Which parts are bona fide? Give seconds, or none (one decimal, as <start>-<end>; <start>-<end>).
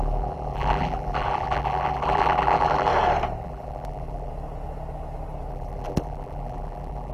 2.9-3.4; 4.3-5.5